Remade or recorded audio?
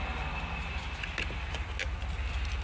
recorded